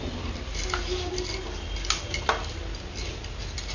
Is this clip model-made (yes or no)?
no